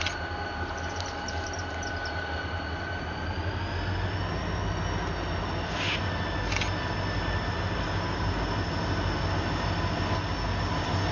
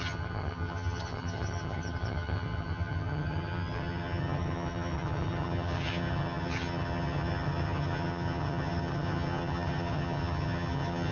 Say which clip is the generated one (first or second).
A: second